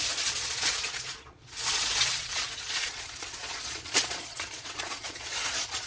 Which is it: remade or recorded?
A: remade